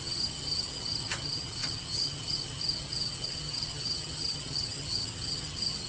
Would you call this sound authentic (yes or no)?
no